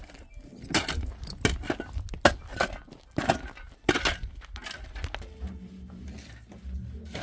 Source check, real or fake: real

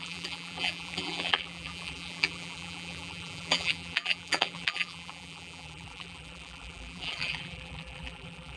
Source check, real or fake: fake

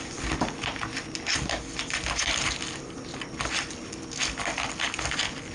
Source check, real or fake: real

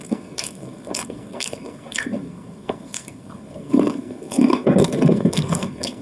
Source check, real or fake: fake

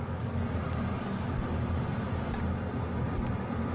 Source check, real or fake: real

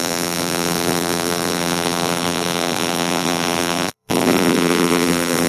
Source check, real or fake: fake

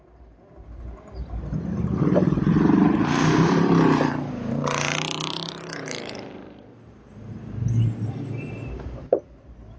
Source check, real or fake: fake